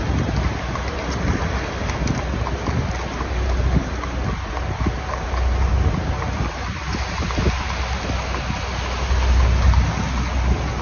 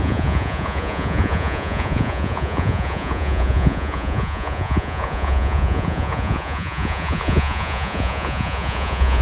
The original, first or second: first